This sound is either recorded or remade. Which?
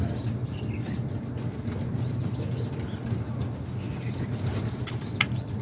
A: recorded